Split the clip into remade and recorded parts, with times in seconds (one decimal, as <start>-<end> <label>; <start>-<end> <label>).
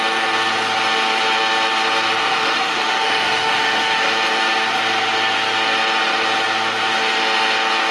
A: 0.0-2.2 recorded; 2.2-4.1 remade; 4.1-7.9 recorded